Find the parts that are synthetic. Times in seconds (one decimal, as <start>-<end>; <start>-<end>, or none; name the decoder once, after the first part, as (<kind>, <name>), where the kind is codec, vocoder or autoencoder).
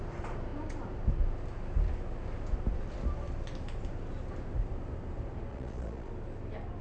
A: 5.5-6.1 (vocoder, Vocos)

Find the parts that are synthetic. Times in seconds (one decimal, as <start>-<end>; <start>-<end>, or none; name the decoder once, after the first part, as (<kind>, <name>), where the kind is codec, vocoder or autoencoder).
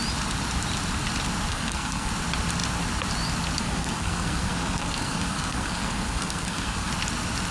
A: 1.5-2.1 (codec, SNAC); 3.6-6.9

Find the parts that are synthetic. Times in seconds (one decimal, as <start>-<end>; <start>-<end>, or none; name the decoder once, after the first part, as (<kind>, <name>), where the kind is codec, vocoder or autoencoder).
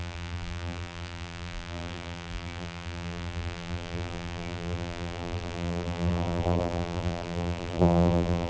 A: 0.0-8.5 (vocoder, BigVGAN v2)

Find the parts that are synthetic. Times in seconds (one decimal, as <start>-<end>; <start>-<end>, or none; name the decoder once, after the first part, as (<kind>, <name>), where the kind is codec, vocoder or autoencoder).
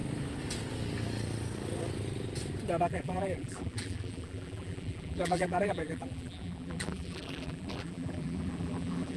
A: 2.8-9.2 (vocoder, BigVGAN v2)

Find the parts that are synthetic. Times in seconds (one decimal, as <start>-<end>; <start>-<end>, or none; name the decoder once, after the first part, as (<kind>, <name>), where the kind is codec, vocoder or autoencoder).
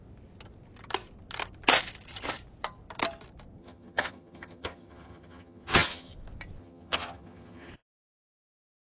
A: 3.6-6.1 (vocoder, HiFi-GAN); 6.6-7.7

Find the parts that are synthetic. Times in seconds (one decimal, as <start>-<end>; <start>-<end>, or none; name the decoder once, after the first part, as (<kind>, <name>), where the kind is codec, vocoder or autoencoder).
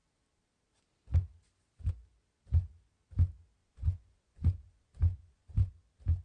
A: 3.6-5.7 (vocoder, Vocos)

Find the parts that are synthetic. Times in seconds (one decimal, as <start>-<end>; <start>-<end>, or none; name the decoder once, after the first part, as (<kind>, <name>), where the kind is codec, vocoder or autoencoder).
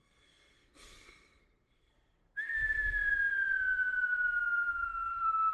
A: 0.0-1.9 (codec, SNAC); 5.1-5.5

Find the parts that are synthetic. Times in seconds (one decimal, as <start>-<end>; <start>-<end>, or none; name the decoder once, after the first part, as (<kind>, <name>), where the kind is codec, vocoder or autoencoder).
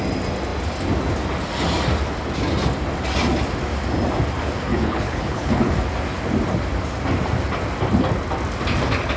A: 4.7-5.7 (codec, HILCodec)